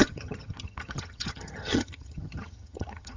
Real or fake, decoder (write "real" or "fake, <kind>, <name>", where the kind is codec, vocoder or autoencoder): fake, vocoder, HiFi-GAN